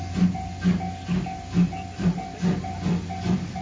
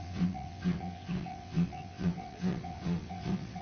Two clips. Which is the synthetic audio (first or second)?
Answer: second